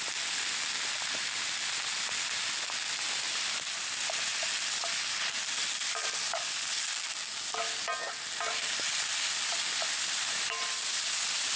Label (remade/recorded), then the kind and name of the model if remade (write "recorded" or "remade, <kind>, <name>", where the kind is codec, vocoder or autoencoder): recorded